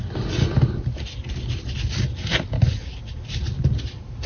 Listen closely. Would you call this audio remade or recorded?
recorded